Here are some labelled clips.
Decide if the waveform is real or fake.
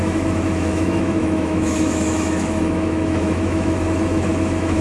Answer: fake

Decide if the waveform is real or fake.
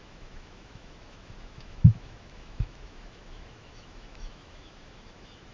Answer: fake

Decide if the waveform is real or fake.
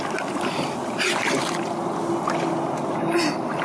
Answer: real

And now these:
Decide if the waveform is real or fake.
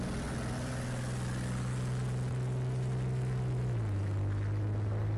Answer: real